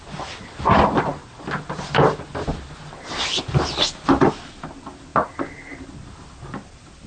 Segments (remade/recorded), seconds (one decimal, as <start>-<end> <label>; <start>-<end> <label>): 0.0-7.1 recorded